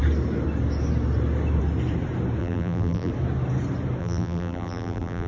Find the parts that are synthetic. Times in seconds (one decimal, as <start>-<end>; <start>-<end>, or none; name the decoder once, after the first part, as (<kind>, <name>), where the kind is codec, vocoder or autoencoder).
2.4-3.1 (vocoder, BigVGAN v2); 4.0-5.3